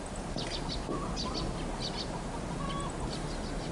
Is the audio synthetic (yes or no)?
no